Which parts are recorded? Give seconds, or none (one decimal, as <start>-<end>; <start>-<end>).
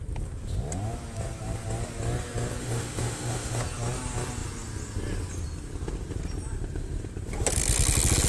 0.0-2.6; 3.6-8.3